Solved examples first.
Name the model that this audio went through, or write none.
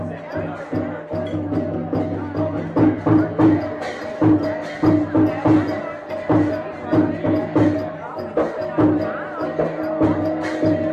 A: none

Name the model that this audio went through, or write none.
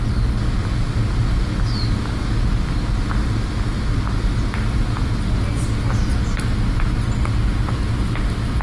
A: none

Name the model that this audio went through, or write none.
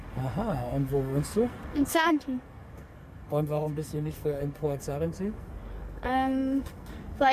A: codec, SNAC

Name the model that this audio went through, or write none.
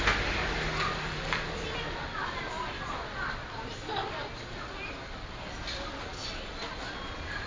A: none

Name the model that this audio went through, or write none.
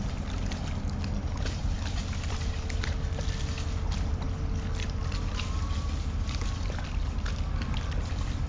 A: none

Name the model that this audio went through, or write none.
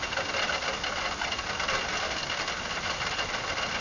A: none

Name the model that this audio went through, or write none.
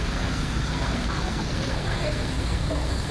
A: codec, SNAC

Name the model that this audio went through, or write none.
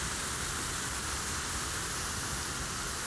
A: none